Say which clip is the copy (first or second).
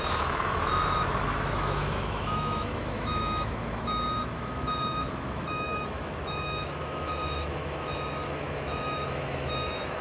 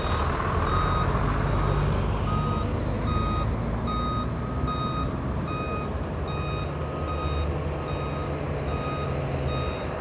first